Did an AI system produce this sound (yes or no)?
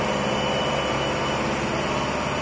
no